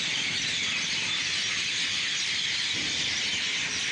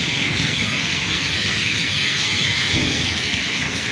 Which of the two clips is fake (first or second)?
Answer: second